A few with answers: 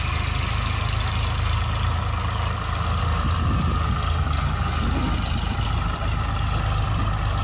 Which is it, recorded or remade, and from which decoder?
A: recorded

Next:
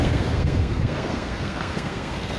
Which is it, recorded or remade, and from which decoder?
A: remade, codec, SNAC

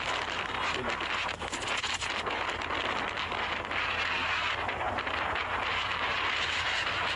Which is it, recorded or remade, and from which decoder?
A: recorded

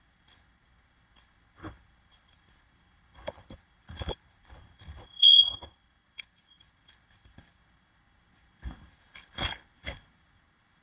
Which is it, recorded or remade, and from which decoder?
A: remade, codec, HILCodec